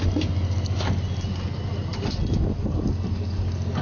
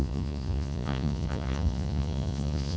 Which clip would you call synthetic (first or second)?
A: second